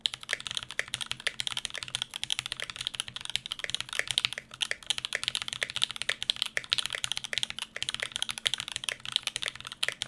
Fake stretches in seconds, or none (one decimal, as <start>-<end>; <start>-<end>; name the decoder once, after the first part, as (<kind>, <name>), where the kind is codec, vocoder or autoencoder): none